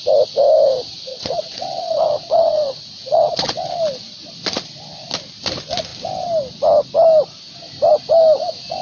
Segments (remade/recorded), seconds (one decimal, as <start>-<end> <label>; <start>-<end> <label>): 0.0-1.1 recorded; 1.1-3.8 remade; 3.8-8.8 recorded